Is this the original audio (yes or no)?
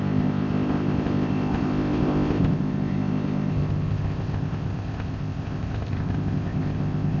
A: no